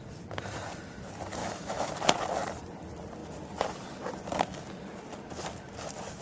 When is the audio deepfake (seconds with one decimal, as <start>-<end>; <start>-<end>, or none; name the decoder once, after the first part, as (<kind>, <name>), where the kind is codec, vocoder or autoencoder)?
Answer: 1.4-1.9 (autoencoder, DAC-VAE)